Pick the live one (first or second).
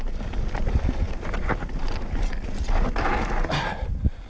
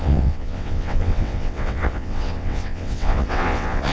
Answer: first